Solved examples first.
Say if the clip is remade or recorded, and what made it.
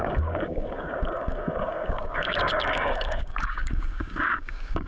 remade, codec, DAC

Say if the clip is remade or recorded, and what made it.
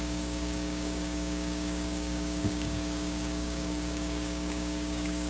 remade, codec, DAC